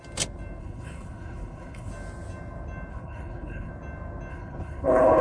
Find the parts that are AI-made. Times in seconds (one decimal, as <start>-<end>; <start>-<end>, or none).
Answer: 0.6-1.9; 2.9-3.7; 4.3-5.2